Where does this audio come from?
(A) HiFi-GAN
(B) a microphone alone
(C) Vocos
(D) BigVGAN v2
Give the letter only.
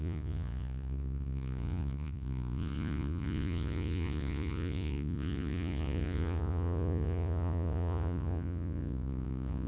C